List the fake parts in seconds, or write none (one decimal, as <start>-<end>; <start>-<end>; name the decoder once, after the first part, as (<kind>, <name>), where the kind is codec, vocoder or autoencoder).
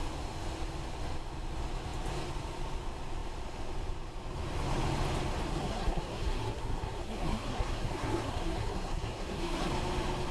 5.5-9.7 (codec, SNAC)